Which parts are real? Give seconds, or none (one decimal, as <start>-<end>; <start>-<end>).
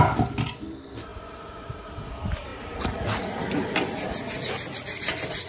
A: 0.0-5.5